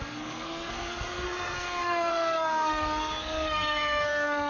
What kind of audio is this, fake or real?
fake